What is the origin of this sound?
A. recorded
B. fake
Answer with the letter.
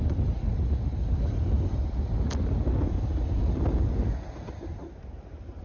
A